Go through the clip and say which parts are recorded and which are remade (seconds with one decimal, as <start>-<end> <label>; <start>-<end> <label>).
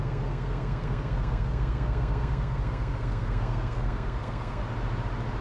0.0-4.6 remade; 4.6-5.4 recorded